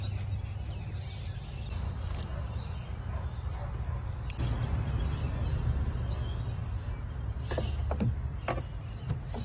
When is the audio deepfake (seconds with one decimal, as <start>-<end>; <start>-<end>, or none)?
none